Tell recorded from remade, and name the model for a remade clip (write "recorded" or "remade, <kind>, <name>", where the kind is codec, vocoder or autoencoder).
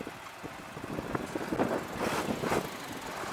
recorded